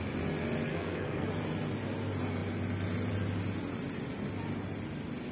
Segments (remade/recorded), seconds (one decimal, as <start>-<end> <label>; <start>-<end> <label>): 0.0-0.7 recorded; 0.7-1.3 remade; 1.3-5.3 recorded